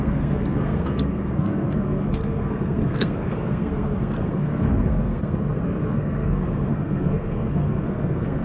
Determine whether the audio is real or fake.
fake